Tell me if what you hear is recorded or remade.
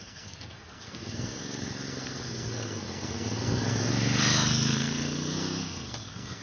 remade